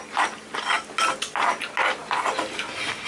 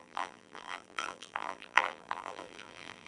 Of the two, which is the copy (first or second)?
second